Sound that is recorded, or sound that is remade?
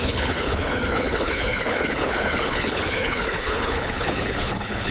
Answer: remade